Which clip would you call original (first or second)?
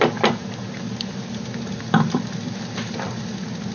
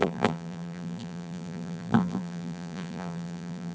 first